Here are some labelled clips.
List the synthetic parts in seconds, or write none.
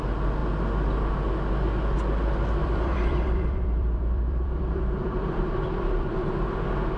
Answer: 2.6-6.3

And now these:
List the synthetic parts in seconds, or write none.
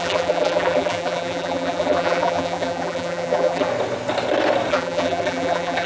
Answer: 0.0-3.7; 4.7-5.9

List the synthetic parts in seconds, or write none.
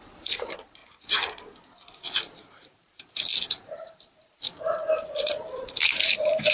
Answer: 0.0-0.8; 2.0-6.5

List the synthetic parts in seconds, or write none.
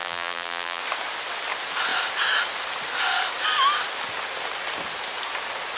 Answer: 0.0-0.8